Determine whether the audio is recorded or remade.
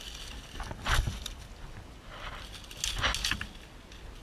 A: recorded